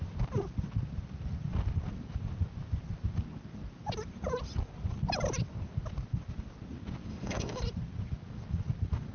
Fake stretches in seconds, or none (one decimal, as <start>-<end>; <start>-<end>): 7.1-7.6